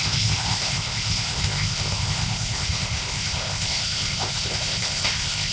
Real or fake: fake